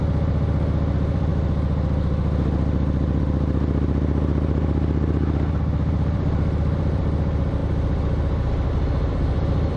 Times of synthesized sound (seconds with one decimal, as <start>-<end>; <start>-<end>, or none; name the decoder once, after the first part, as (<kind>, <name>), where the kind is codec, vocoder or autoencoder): 0.0-1.3 (vocoder, BigVGAN v2); 3.2-7.6; 8.7-9.8